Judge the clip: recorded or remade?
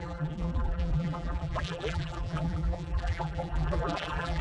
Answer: remade